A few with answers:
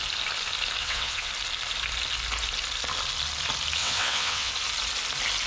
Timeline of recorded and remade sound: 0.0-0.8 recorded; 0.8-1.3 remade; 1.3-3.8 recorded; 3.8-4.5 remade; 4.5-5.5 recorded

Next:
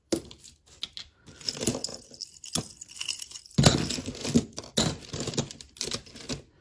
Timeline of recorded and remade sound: 0.0-6.6 recorded

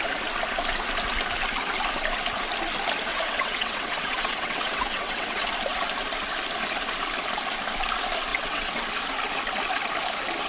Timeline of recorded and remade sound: 0.0-3.1 recorded; 3.1-5.5 remade; 5.5-8.3 recorded; 8.3-8.8 remade; 8.8-10.5 recorded

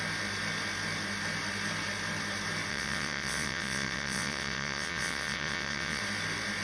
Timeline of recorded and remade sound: 0.0-2.7 recorded; 2.7-6.0 remade; 6.0-6.6 recorded

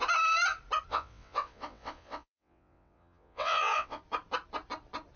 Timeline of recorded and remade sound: 0.0-0.9 recorded; 0.9-4.0 remade; 4.0-5.2 recorded